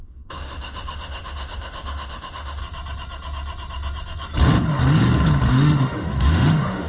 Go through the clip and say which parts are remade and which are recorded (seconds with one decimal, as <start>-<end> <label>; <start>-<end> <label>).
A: 0.0-2.6 remade; 2.6-5.5 recorded; 5.5-6.9 remade